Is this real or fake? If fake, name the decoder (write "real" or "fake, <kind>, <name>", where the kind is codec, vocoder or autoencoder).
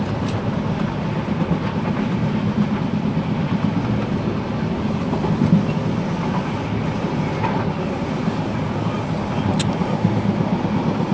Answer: real